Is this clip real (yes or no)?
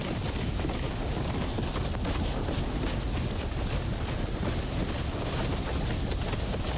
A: yes